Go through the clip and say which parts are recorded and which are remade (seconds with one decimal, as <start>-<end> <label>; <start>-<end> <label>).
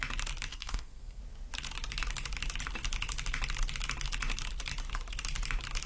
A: 0.0-0.5 recorded; 0.5-1.2 remade; 1.2-5.9 recorded